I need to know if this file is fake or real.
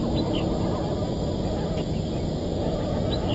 real